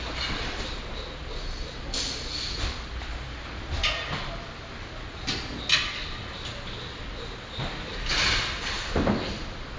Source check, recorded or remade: recorded